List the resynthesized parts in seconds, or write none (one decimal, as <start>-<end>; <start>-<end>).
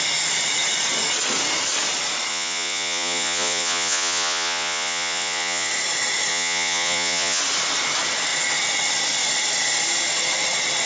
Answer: 2.3-5.7; 6.3-7.4